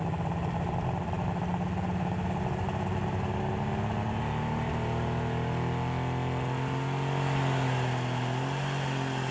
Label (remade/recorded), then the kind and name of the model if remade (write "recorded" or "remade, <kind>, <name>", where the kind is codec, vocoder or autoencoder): recorded